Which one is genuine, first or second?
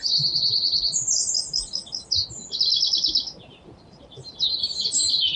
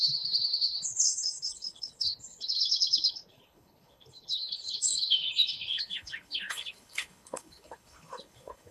first